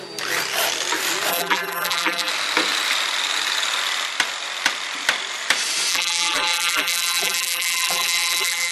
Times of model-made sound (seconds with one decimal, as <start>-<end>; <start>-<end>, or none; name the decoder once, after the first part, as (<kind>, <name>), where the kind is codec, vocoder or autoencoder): 1.3-2.3 (vocoder, BigVGAN v2); 5.9-8.7